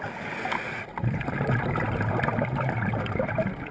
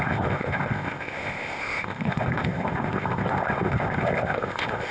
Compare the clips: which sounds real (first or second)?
first